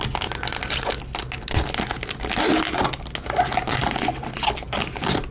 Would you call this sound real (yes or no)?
yes